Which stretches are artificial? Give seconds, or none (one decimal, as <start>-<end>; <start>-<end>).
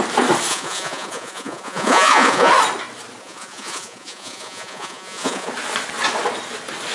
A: 0.5-2.5; 3.2-5.5